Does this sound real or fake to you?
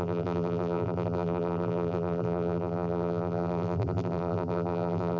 fake